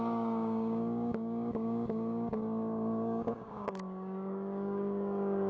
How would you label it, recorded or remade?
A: remade